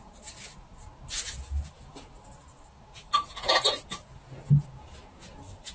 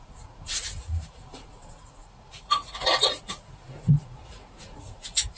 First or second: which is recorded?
first